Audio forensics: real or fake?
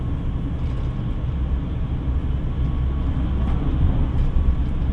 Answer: real